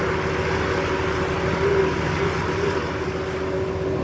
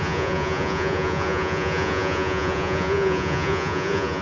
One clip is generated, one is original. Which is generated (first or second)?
second